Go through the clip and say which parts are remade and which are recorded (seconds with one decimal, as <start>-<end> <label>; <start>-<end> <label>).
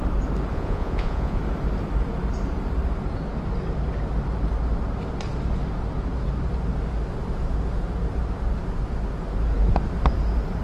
0.0-0.5 recorded; 0.5-1.4 remade; 1.4-10.6 recorded